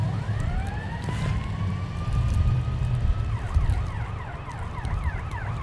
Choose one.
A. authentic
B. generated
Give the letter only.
A